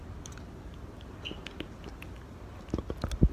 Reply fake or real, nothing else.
real